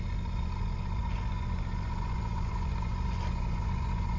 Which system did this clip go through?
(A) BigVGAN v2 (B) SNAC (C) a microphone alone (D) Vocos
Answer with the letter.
D